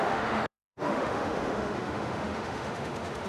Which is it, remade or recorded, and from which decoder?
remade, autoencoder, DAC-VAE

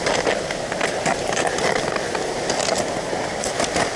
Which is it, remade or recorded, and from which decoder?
recorded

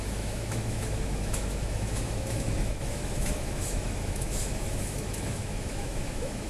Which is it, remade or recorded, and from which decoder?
remade, autoencoder, DAC-VAE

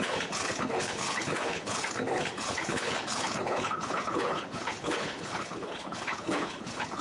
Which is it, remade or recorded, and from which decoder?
remade, codec, HILCodec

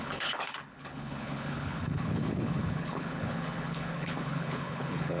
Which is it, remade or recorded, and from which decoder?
remade, codec, HILCodec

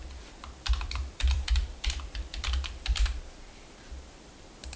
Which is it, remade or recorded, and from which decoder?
remade, vocoder, BigVGAN v2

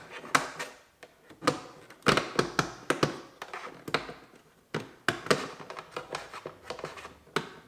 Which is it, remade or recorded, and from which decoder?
recorded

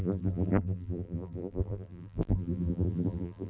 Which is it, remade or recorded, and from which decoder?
remade, vocoder, BigVGAN v2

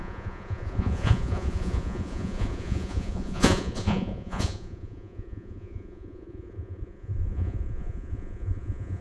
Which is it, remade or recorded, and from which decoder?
remade, vocoder, Vocos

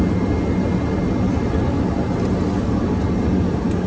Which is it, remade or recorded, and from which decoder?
recorded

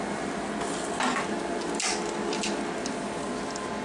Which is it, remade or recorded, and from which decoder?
recorded